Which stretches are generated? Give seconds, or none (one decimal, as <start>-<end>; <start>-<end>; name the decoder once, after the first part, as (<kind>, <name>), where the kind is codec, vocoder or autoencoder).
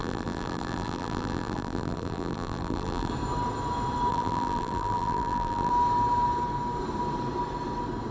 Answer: 0.0-3.1 (vocoder, BigVGAN v2); 4.1-5.7